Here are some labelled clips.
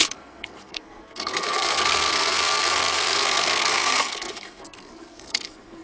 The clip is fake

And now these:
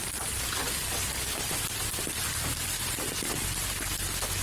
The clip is fake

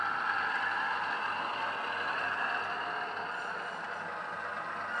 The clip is real